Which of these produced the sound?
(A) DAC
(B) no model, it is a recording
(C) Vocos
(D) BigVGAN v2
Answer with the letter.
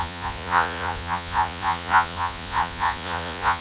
C